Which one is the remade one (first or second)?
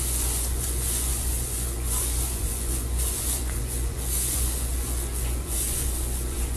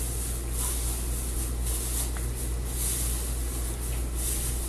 first